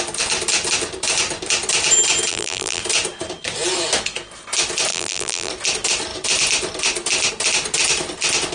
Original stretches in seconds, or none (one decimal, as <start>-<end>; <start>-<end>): 0.0-2.3; 2.8-4.9; 5.5-8.5